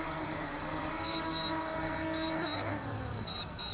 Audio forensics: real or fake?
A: fake